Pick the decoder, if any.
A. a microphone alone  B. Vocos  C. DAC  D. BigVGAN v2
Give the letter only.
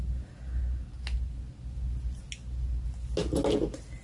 A